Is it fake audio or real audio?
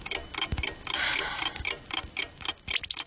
real